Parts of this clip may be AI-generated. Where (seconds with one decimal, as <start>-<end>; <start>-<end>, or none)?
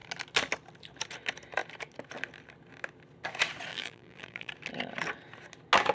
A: 3.7-4.5